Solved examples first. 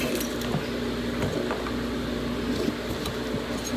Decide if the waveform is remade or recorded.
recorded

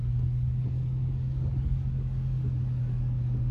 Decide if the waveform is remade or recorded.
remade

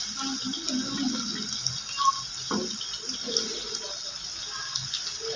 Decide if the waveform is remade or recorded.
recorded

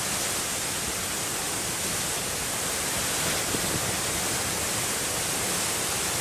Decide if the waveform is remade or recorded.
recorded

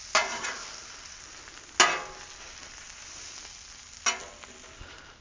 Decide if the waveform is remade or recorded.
recorded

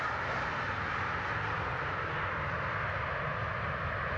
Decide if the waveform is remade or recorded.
recorded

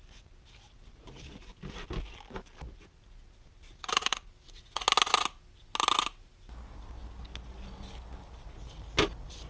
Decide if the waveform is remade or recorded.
recorded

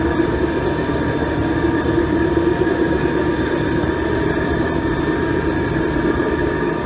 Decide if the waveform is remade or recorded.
remade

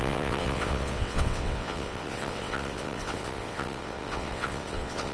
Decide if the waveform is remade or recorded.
remade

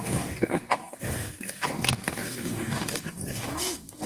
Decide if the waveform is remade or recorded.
remade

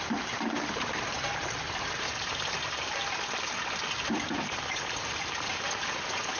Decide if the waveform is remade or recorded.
remade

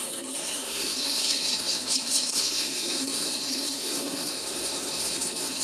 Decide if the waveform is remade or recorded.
remade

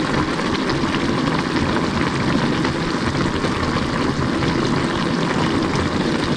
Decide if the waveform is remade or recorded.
recorded